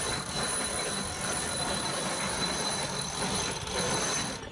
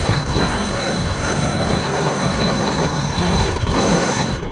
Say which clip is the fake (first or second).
second